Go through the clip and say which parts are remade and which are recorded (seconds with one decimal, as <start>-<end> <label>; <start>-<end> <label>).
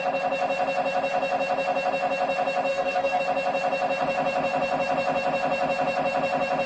0.0-2.7 recorded; 2.7-3.2 remade; 3.2-6.7 recorded